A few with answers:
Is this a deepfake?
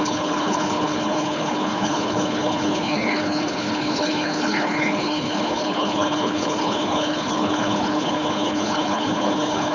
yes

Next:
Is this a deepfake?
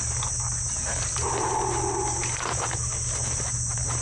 no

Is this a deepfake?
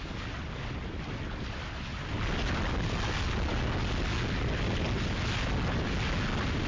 no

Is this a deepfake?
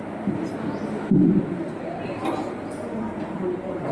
no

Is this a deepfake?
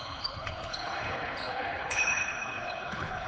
yes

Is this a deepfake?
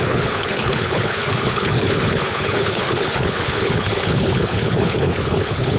yes